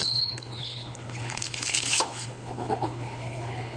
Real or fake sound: fake